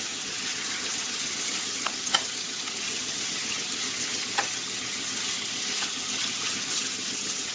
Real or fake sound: fake